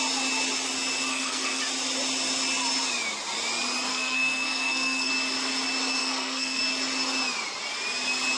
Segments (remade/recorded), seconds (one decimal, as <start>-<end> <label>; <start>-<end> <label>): 0.0-1.1 recorded; 1.1-1.6 remade; 1.6-3.9 recorded; 3.9-5.1 remade; 5.1-6.0 recorded; 6.0-6.6 remade; 6.6-8.4 recorded